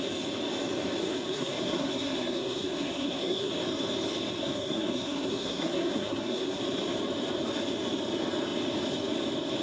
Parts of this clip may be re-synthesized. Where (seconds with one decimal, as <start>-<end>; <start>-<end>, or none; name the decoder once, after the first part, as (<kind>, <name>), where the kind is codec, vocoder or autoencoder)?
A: 1.0-3.5 (codec, SNAC); 4.4-6.6